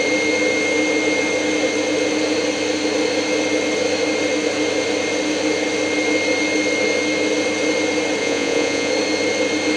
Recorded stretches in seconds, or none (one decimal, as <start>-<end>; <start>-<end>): 0.0-8.2; 8.9-9.8